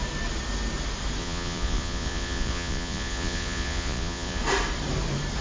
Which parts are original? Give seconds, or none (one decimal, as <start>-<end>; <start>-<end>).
0.0-1.2; 4.4-5.4